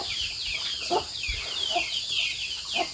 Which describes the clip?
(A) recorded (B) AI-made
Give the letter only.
A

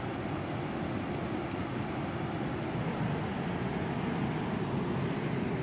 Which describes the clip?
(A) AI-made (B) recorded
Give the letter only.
B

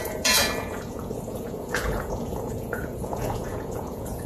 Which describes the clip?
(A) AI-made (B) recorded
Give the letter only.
A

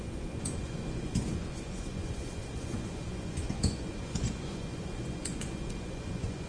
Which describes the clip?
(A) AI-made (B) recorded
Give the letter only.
A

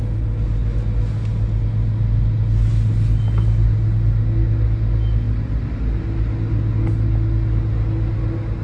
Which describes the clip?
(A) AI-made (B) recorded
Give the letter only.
B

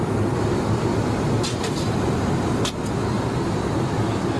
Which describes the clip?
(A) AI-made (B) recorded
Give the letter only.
B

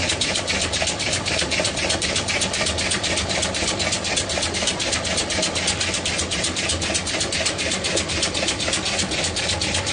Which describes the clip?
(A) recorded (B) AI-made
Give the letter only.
A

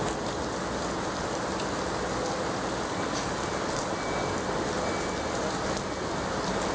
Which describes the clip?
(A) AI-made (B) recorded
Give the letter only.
B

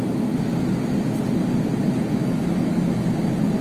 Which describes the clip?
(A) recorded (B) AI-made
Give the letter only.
A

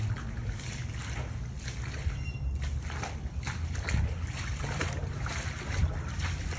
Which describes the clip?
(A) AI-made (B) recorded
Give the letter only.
B